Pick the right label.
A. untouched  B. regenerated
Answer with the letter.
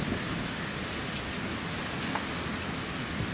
A